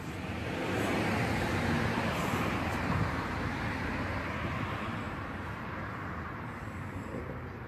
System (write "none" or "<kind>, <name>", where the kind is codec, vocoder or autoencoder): vocoder, BigVGAN v2